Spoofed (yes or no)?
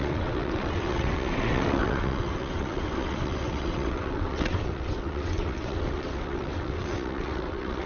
yes